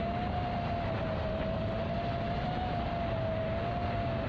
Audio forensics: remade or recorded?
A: recorded